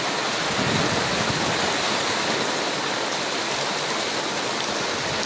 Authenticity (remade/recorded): recorded